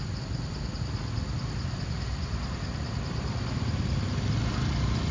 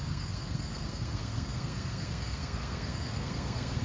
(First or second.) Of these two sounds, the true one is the first